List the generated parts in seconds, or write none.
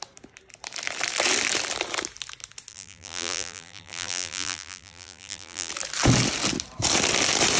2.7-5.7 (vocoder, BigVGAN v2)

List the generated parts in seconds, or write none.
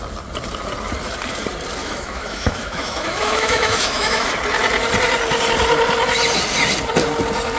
1.8-4.3 (autoencoder, DAC-VAE)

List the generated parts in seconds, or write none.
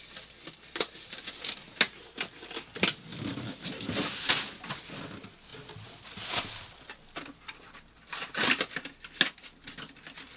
none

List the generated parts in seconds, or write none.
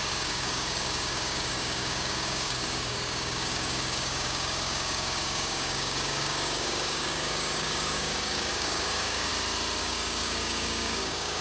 0.0-9.3 (codec, DAC); 9.8-11.4